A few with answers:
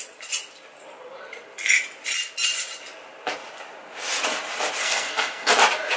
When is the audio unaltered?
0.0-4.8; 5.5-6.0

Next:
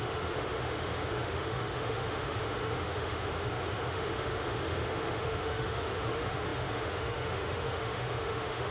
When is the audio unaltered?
none